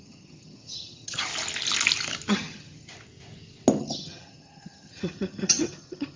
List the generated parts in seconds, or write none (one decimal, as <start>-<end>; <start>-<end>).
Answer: 0.0-1.3; 2.3-2.9; 3.8-6.2